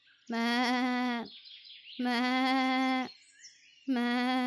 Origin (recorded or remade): recorded